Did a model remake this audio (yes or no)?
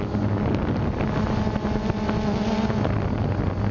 no